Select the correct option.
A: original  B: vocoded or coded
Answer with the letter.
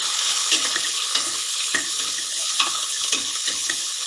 B